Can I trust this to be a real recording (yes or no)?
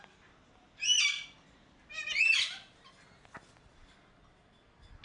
yes